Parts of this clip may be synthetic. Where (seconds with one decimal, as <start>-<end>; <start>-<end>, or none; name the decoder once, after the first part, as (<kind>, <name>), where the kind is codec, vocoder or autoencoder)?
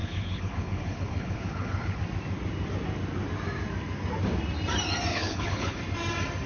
0.0-2.0 (codec, HILCodec); 5.1-5.8